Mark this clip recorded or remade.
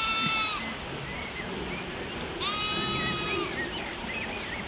recorded